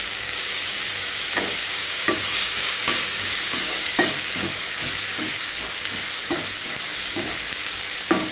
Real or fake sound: fake